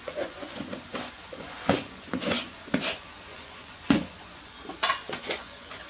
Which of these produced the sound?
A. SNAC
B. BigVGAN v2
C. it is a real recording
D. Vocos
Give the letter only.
D